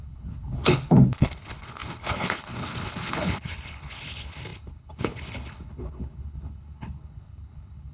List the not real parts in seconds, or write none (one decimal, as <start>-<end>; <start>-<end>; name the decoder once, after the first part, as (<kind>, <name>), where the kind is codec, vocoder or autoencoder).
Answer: 0.0-7.9 (codec, HILCodec)